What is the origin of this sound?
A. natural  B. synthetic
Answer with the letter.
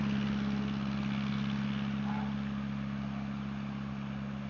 A